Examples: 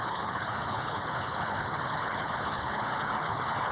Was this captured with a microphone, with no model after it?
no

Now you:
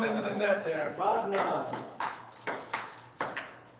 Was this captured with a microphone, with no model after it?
no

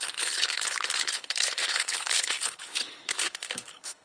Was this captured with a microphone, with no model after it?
no